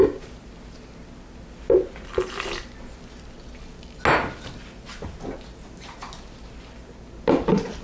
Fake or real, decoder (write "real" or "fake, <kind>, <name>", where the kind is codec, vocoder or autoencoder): real